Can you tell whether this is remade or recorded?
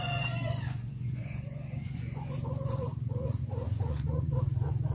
remade